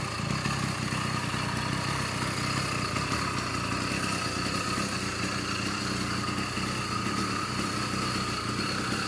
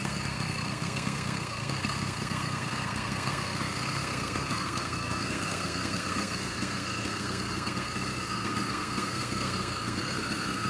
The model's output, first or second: second